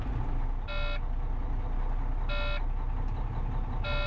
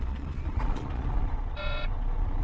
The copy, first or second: second